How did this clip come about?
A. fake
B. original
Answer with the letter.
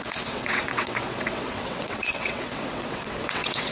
A